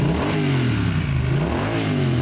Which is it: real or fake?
real